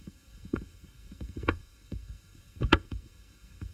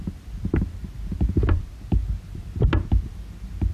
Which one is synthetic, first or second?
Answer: first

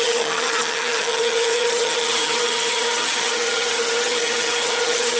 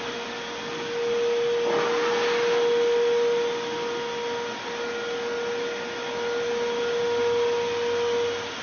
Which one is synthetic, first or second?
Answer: first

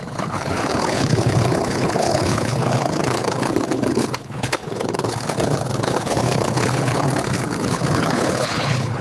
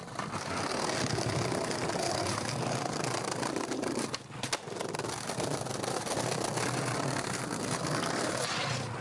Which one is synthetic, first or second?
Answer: first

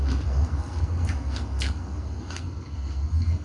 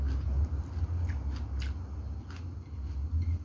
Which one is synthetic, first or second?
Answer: first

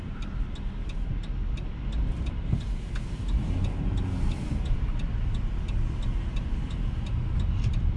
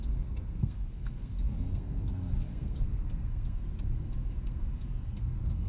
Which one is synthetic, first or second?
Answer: second